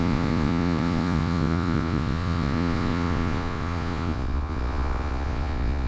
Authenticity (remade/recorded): remade